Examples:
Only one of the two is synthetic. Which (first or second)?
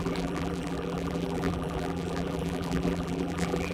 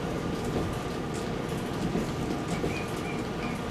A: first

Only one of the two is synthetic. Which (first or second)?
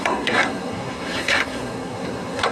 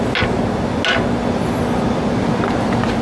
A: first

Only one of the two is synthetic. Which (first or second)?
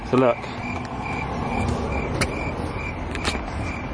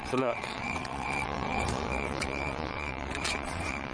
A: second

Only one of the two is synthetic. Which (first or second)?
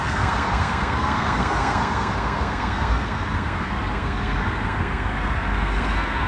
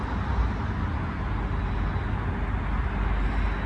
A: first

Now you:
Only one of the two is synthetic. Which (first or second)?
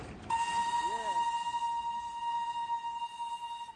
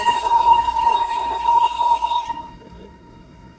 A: second